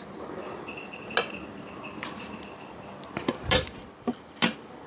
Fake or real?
real